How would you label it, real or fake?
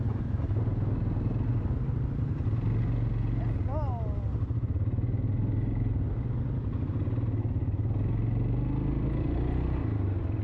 real